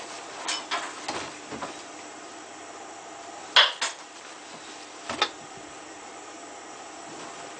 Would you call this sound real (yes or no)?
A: yes